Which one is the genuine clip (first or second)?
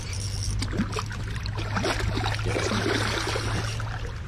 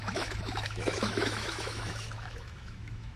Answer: first